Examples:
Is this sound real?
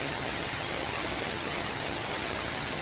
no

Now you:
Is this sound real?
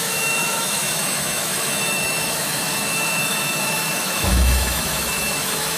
no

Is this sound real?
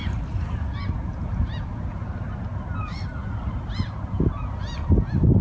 yes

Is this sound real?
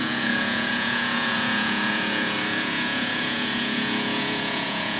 no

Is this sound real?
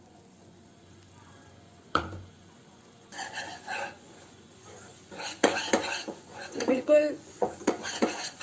no